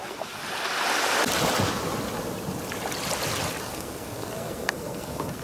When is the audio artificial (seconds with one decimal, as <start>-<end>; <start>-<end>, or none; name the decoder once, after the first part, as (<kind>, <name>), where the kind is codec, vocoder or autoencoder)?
0.0-0.4 (codec, SNAC); 3.6-5.4